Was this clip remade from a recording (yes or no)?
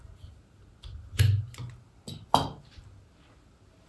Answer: no